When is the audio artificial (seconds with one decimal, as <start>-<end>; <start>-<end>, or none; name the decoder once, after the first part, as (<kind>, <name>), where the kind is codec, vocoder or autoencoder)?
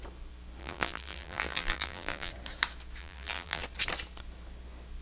0.6-2.3 (vocoder, BigVGAN v2); 3.0-3.6